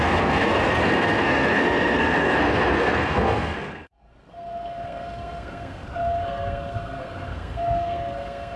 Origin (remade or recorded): remade